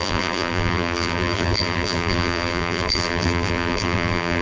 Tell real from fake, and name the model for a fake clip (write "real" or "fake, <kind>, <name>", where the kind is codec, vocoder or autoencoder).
fake, vocoder, BigVGAN v2